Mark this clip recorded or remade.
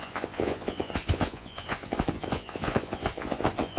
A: remade